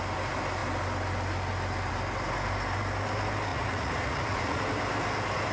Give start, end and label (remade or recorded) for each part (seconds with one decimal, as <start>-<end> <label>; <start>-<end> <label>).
0.0-3.5 recorded; 3.5-4.6 remade; 4.6-5.5 recorded

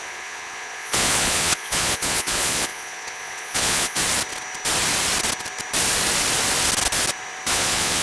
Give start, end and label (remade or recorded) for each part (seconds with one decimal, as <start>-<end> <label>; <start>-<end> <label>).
0.0-4.0 remade; 4.0-7.5 recorded; 7.5-8.0 remade